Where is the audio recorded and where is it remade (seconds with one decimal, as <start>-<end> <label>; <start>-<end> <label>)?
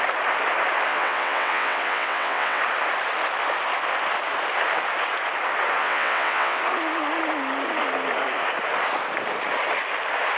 0.0-0.9 recorded; 0.9-2.6 remade; 2.6-5.8 recorded; 5.8-6.6 remade; 6.6-10.4 recorded